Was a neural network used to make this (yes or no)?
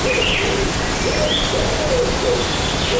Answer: no